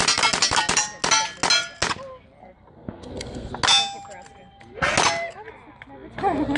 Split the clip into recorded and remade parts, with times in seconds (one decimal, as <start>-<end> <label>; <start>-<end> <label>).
0.0-2.4 recorded; 2.4-3.5 remade; 3.5-6.6 recorded